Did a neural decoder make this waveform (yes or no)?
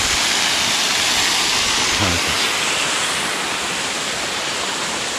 no